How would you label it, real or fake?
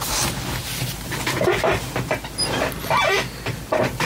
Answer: real